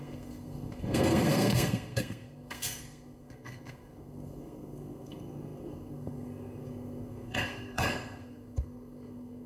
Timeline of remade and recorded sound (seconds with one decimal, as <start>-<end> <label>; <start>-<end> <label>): 0.0-9.5 remade